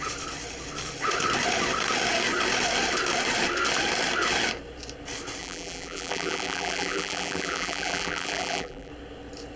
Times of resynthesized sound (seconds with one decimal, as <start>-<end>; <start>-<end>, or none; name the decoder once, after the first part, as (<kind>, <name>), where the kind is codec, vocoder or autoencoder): 5.4-8.9 (vocoder, BigVGAN v2)